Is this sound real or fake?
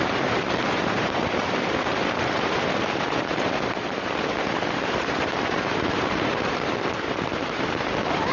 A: fake